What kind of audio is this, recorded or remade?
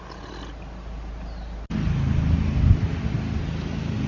recorded